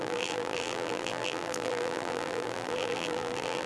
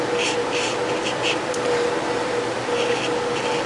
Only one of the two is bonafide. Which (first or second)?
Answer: second